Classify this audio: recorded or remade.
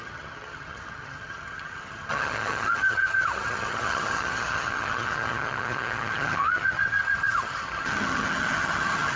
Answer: remade